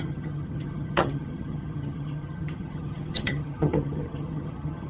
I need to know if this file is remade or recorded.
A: remade